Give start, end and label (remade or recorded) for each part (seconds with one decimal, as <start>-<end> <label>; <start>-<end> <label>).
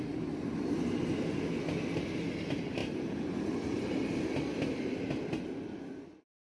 0.0-6.5 recorded